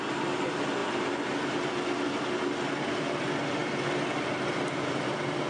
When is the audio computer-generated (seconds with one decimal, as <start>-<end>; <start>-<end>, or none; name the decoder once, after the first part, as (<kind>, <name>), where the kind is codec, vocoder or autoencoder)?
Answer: none